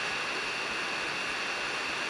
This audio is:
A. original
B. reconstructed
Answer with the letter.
A